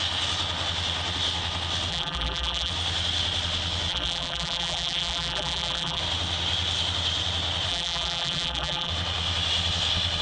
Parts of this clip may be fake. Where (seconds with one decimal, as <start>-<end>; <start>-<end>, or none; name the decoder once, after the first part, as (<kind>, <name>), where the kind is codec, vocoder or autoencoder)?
1.9-2.7 (vocoder, BigVGAN v2); 3.9-6.0; 7.7-8.9